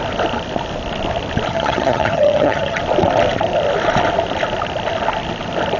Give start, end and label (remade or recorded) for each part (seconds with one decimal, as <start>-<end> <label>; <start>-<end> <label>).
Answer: 0.0-1.5 recorded; 1.5-2.8 remade; 2.8-5.8 recorded